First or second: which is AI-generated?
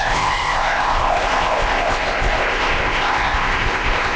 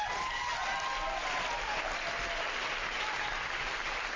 first